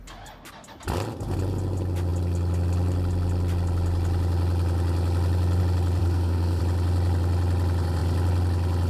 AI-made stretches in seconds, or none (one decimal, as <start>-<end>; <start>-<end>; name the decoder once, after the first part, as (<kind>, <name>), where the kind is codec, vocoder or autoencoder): 6.0-6.6 (codec, SNAC)